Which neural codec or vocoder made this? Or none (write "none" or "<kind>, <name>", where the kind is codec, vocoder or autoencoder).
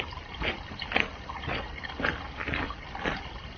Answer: none